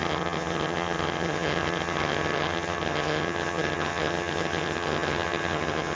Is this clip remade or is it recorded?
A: remade